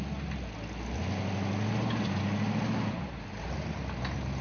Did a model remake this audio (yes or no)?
no